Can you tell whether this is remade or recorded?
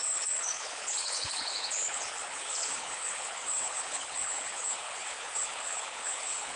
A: remade